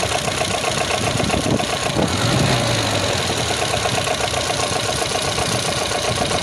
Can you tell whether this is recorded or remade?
recorded